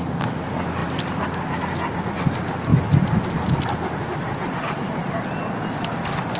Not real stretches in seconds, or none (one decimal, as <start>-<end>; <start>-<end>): none